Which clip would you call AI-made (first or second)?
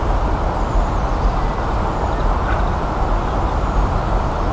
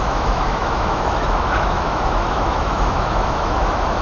second